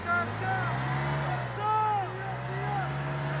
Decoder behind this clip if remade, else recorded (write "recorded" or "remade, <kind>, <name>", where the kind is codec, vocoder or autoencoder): recorded